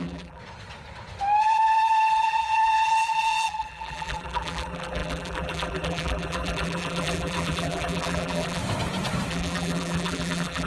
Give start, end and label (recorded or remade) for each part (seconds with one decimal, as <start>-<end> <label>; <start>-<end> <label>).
0.0-0.4 remade; 0.4-1.4 recorded; 1.4-8.6 remade; 8.6-9.3 recorded; 9.3-10.7 remade